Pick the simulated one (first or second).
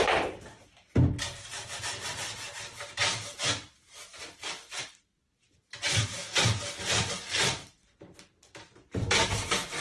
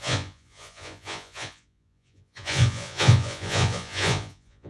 second